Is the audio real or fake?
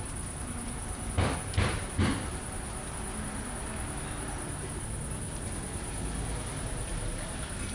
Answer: real